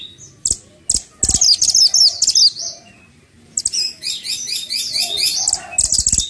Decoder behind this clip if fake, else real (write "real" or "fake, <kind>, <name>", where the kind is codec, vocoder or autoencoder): real